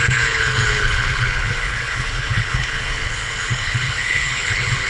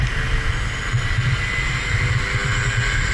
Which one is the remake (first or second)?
first